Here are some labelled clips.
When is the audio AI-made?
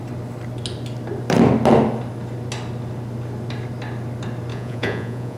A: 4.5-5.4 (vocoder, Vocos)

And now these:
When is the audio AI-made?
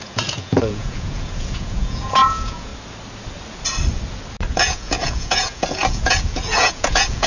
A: 0.0-2.7 (vocoder, Vocos); 4.5-7.3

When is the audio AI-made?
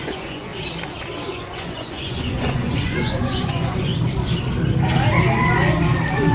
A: 0.0-0.5 (vocoder, Vocos); 1.3-3.9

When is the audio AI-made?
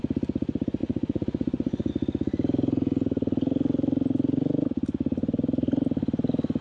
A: 0.8-1.9 (vocoder, Vocos)